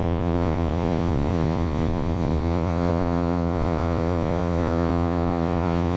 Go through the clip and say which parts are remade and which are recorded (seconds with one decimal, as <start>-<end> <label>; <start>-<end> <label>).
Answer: 0.0-6.0 remade